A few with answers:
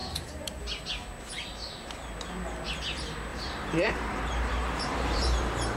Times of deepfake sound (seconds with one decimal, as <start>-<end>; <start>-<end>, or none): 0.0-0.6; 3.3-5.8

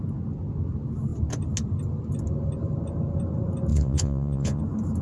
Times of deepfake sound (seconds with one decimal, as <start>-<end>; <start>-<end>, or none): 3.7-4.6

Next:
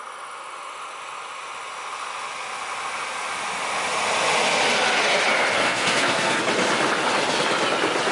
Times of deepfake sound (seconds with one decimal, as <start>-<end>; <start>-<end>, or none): 5.6-6.4